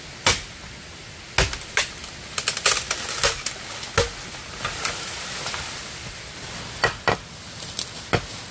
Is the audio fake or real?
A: real